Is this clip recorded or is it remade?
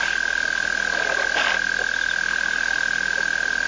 recorded